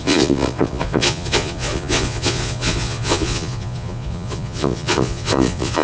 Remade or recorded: remade